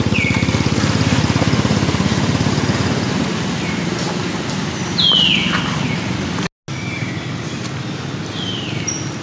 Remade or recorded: recorded